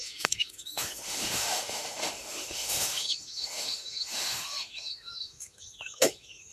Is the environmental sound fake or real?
fake